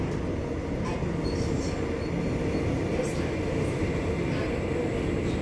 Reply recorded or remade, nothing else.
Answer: recorded